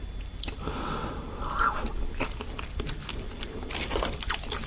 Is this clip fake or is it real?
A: real